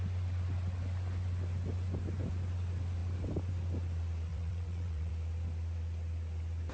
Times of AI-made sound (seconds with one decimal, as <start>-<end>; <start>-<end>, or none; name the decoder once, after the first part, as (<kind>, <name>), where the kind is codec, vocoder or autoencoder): 4.3-5.1 (vocoder, WaveNeXt)